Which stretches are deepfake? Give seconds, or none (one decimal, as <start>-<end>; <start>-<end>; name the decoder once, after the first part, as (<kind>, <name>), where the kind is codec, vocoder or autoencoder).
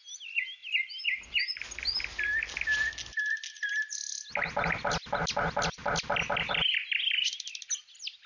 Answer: none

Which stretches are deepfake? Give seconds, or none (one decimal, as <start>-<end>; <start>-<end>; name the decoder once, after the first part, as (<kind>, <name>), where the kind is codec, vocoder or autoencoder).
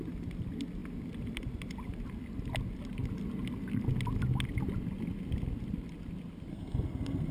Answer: 6.5-7.3 (codec, SNAC)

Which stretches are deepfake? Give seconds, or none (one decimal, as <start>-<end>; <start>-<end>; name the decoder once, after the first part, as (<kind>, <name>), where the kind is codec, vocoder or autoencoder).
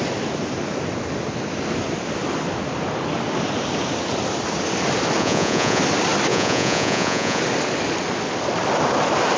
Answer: 5.2-5.8 (vocoder, Vocos); 6.3-7.4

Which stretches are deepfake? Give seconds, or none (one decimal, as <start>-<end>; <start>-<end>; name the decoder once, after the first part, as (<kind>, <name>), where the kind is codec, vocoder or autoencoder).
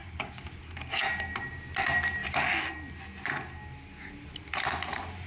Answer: 0.0-0.6 (codec, DAC)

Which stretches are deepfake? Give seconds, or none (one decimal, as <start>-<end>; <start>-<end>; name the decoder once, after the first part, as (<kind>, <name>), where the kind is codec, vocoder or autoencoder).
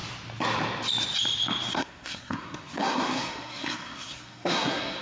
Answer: 1.7-5.0 (codec, SNAC)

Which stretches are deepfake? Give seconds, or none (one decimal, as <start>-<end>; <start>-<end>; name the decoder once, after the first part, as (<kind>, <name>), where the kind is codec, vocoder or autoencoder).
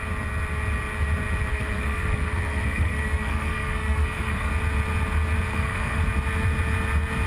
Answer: 1.5-4.5 (codec, SNAC); 5.5-6.0